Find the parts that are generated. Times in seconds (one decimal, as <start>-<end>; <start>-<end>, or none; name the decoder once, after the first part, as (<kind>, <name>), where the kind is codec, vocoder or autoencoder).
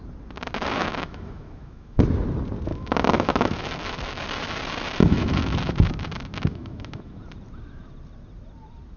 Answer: 0.8-2.0 (autoencoder, DAC-VAE); 2.7-4.2; 5.0-5.7; 6.5-7.2